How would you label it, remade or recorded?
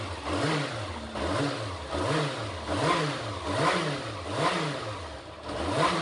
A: recorded